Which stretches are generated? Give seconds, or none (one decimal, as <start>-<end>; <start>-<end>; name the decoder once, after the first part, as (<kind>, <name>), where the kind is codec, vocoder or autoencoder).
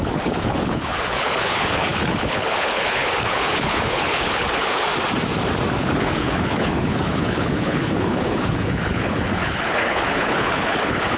0.0-4.9 (codec, HILCodec); 5.8-11.2